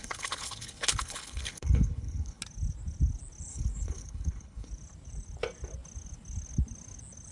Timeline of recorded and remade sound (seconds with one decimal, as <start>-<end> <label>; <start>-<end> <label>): 0.0-2.4 remade; 2.4-3.5 recorded; 3.5-4.7 remade; 4.7-7.3 recorded